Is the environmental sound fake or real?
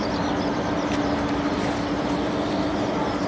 real